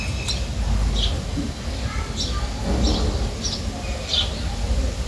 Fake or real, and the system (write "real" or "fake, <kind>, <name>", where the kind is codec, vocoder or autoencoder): real